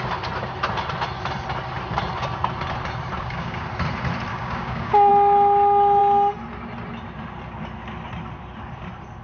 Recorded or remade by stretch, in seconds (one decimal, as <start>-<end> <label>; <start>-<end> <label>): 0.0-3.2 recorded; 3.2-3.7 remade; 3.7-4.3 recorded; 4.3-5.1 remade; 5.1-9.2 recorded

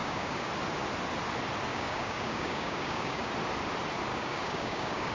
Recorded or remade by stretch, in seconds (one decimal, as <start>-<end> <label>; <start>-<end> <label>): 0.0-0.5 remade; 0.5-1.7 recorded; 1.7-3.3 remade; 3.3-4.1 recorded; 4.1-5.1 remade

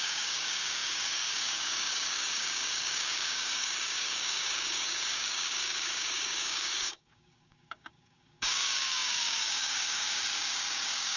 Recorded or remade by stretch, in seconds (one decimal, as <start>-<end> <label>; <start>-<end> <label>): 0.0-11.2 remade

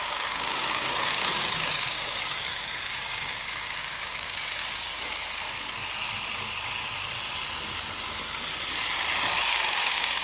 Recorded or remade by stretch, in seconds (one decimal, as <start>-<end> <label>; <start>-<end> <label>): 0.0-4.6 remade; 4.6-9.4 recorded; 9.4-10.2 remade

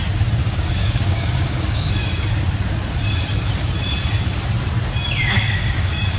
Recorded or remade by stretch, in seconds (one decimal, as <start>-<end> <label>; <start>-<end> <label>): 0.0-0.4 recorded; 0.4-1.9 remade; 1.9-5.2 recorded; 5.2-6.2 remade

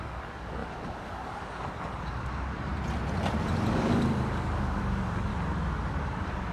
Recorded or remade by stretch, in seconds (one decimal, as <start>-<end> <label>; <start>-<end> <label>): 0.0-2.7 remade; 2.7-3.7 recorded; 3.7-5.3 remade; 5.3-6.0 recorded; 6.0-6.5 remade